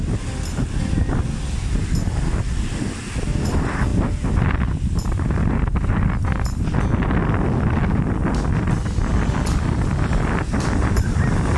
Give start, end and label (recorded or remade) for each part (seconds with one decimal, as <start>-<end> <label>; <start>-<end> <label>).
0.0-9.1 recorded; 9.1-11.6 remade